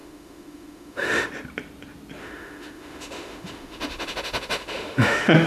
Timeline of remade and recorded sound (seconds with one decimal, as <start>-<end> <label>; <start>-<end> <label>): 0.0-1.3 remade; 1.3-2.2 recorded; 2.2-5.5 remade